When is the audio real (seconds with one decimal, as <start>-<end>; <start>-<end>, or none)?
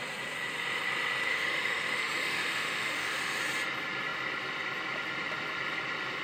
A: 0.0-1.3; 3.4-6.2